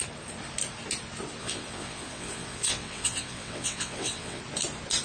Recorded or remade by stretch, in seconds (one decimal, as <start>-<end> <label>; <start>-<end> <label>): 0.0-1.4 recorded; 1.4-4.4 remade; 4.4-5.0 recorded